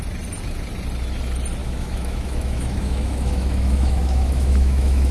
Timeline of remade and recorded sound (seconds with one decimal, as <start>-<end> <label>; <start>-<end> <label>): 0.0-1.6 recorded; 1.6-5.1 remade